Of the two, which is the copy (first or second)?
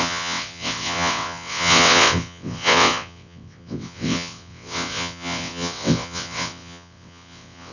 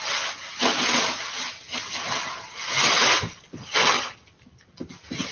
first